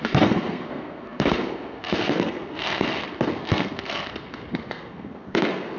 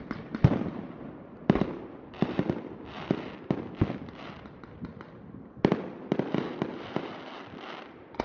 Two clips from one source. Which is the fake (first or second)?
first